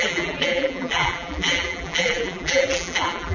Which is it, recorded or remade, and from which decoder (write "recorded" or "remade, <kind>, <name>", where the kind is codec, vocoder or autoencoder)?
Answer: remade, vocoder, BigVGAN v2